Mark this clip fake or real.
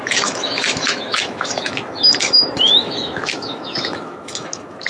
fake